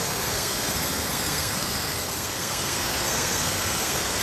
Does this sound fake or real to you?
fake